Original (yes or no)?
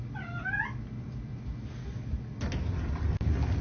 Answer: yes